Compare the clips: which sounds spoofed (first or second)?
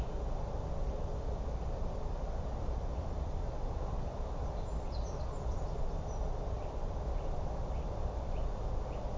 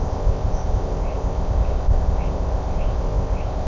second